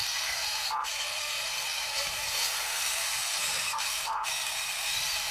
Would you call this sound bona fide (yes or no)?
no